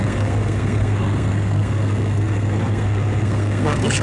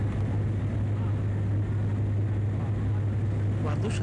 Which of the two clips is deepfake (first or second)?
first